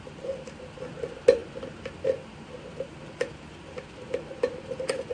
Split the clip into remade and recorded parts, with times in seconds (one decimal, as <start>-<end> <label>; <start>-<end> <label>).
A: 0.0-5.1 recorded